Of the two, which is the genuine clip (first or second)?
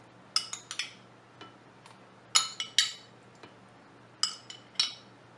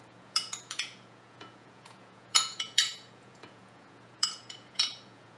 first